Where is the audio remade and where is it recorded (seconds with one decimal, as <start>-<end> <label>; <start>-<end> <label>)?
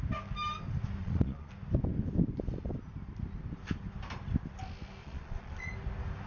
0.0-1.0 recorded; 1.0-1.5 remade; 1.5-5.0 recorded; 5.0-5.7 remade; 5.7-6.3 recorded